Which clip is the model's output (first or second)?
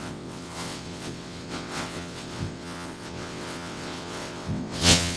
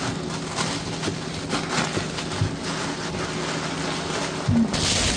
first